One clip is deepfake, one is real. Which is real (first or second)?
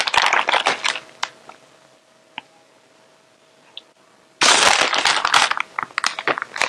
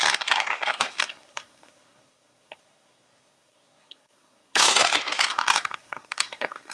first